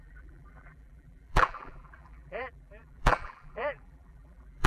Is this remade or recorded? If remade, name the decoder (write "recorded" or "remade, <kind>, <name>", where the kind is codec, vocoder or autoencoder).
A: remade, vocoder, BigVGAN v2